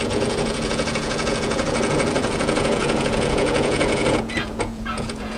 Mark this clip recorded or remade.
remade